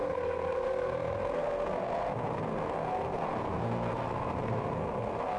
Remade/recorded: remade